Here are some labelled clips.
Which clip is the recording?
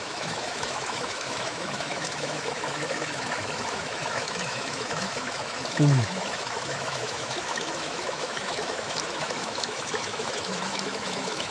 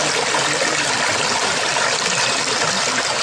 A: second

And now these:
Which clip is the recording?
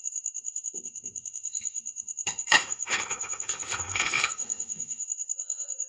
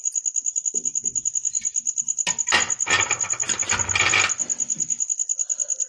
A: second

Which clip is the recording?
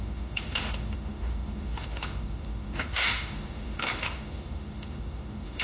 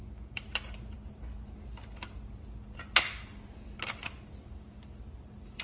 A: second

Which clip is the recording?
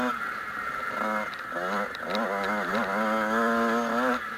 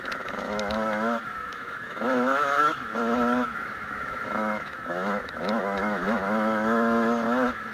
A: first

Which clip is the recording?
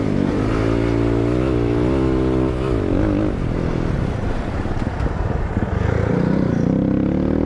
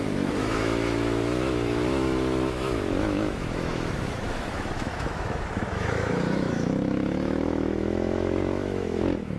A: first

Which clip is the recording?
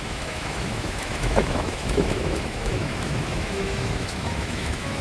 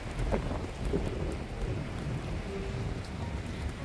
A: second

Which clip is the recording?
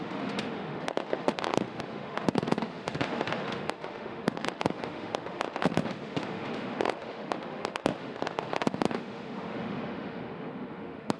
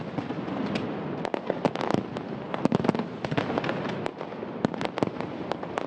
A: second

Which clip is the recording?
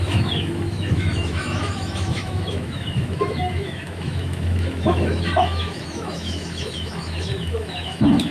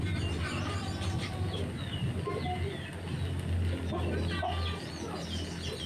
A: second